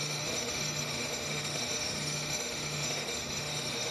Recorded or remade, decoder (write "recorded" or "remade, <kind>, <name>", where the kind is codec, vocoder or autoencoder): remade, autoencoder, DAC-VAE